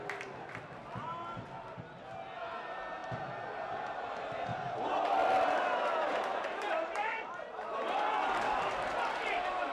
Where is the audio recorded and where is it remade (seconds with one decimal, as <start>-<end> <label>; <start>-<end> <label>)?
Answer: 0.0-6.3 recorded; 6.3-7.5 remade; 7.5-9.7 recorded